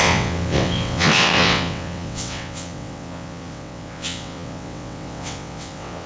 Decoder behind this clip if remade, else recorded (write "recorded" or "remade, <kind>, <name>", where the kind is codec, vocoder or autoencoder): remade, vocoder, WaveNeXt